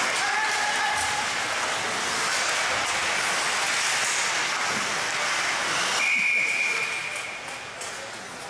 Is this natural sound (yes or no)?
yes